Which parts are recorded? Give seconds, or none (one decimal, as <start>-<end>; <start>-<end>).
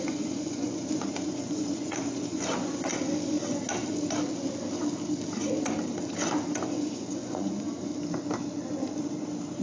2.9-6.7; 7.9-9.6